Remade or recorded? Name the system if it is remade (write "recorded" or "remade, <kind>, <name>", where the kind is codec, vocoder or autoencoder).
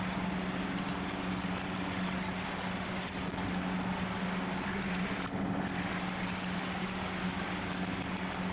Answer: recorded